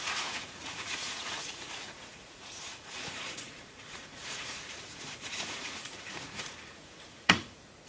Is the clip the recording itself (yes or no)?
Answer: no